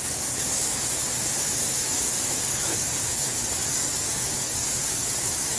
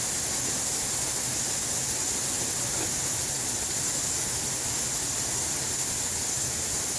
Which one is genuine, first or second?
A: second